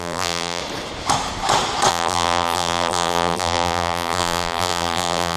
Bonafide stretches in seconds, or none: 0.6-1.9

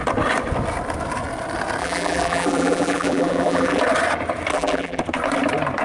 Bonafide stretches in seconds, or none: 0.0-1.8; 3.8-4.5; 5.0-5.8

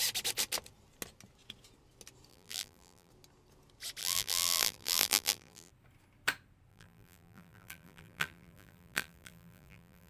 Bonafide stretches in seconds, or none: 0.0-2.3; 3.1-4.0; 5.7-6.7

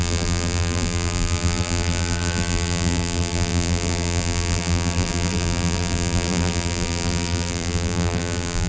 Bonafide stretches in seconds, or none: none

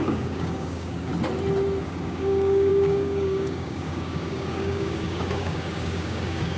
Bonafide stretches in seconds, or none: 1.1-1.8

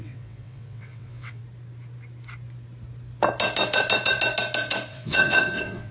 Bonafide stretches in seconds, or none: 1.4-4.9

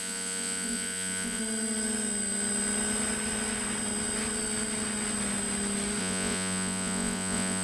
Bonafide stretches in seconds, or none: 1.4-6.0